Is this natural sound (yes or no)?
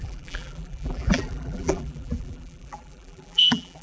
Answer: no